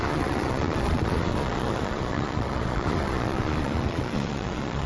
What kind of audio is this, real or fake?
fake